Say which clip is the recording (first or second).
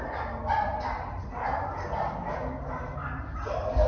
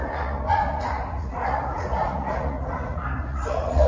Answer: first